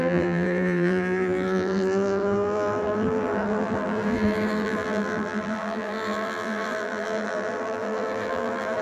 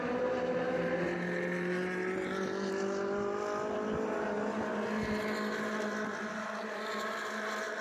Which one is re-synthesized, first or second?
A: first